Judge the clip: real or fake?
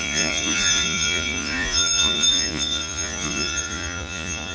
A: fake